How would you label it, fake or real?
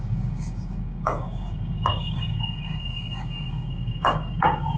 fake